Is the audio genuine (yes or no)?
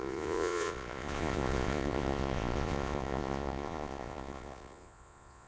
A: no